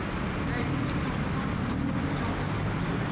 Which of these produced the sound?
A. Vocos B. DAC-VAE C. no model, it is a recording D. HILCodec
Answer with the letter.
C